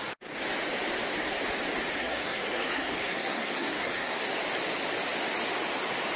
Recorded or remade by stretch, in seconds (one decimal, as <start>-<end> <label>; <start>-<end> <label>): 0.0-1.9 recorded; 1.9-4.2 remade; 4.2-6.2 recorded